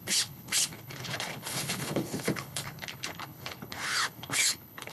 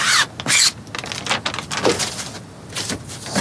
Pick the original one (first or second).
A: second